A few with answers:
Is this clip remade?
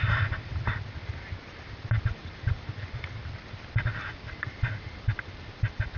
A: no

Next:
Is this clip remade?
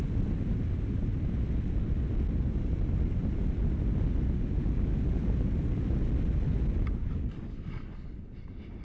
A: no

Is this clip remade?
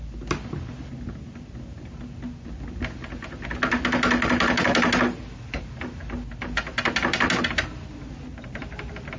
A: no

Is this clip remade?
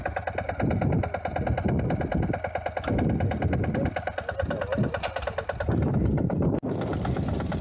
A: no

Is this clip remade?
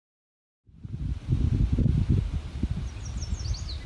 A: no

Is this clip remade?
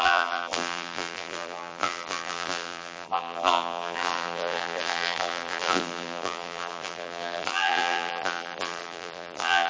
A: yes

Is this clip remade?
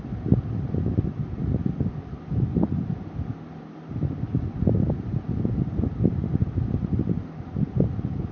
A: no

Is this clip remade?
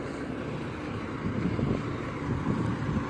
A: no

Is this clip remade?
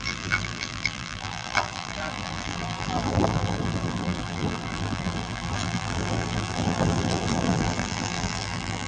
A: yes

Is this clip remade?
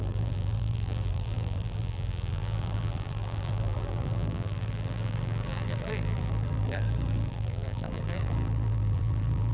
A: yes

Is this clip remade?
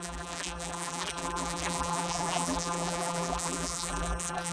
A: yes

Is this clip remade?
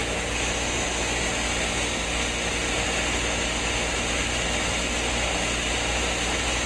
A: no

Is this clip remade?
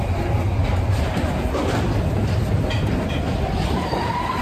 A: no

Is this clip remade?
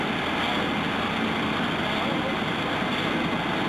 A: no